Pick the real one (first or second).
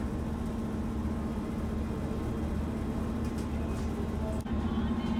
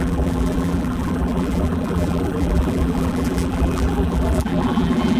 first